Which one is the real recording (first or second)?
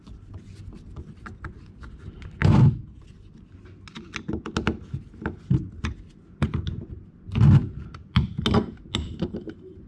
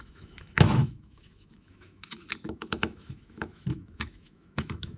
first